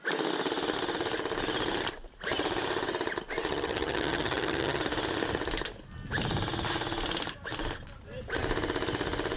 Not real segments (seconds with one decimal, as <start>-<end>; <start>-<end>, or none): 3.5-4.8